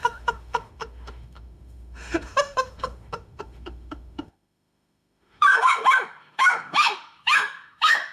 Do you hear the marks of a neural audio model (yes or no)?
yes